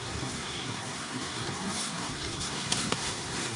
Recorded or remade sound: remade